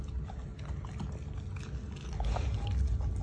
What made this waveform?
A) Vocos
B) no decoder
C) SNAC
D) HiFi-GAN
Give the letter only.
B